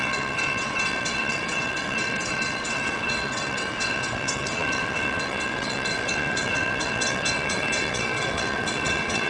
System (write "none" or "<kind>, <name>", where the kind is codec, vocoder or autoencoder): vocoder, WaveNeXt